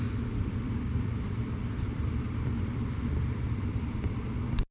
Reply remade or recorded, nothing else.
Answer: remade